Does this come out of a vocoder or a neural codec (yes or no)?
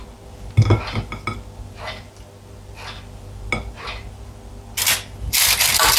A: no